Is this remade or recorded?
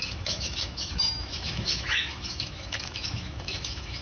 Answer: remade